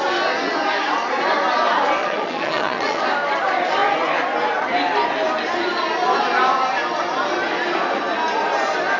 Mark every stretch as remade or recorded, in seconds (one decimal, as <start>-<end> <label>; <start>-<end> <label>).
0.0-2.0 recorded; 2.0-3.0 remade; 3.0-9.0 recorded